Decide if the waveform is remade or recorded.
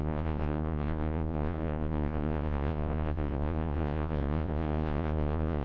remade